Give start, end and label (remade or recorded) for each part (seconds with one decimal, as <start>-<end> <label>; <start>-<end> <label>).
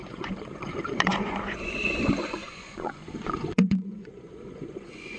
0.0-5.2 remade